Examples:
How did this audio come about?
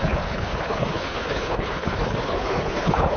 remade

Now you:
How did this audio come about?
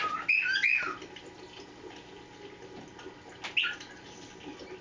recorded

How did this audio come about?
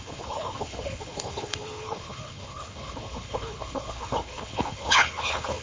remade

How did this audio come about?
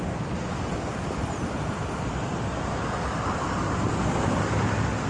recorded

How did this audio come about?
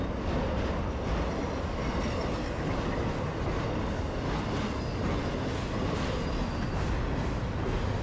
recorded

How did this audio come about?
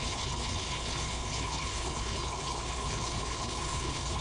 remade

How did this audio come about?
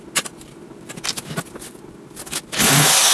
recorded